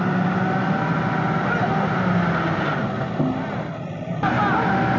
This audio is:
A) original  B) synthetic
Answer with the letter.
A